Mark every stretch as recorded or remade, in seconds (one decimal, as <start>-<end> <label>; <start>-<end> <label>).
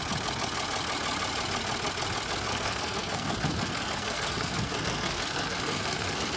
0.0-2.5 recorded; 2.5-6.4 remade